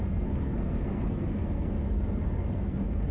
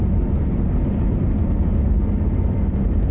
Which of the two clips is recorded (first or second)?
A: second